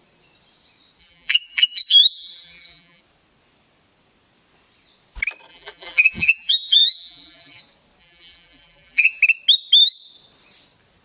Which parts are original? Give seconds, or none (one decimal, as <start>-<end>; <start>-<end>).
0.0-1.0; 3.0-5.5; 7.6-8.0; 9.2-11.0